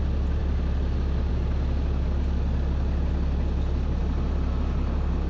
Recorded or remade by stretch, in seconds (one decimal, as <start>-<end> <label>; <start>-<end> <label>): 0.0-5.3 recorded